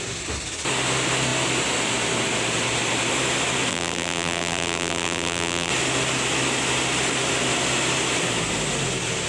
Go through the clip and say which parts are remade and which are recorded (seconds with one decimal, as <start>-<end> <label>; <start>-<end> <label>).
0.0-3.7 recorded; 3.7-5.7 remade; 5.7-9.3 recorded